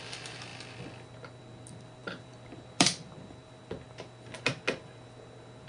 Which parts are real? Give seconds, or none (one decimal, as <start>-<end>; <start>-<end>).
0.0-2.0; 3.6-5.7